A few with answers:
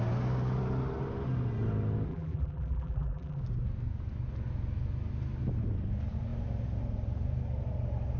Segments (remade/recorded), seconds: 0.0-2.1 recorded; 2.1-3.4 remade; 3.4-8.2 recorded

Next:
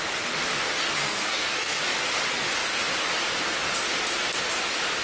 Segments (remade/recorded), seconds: 0.0-1.0 recorded; 1.0-1.8 remade; 1.8-5.0 recorded

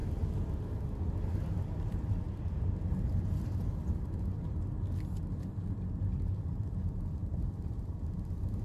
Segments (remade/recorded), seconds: 0.0-4.0 recorded; 4.0-4.6 remade; 4.6-6.5 recorded; 6.5-8.6 remade

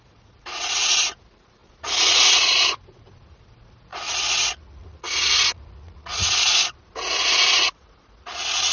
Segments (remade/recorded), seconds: 0.0-8.7 remade